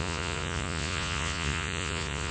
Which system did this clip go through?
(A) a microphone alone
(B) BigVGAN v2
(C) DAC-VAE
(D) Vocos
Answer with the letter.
D